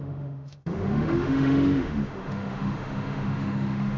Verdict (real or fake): fake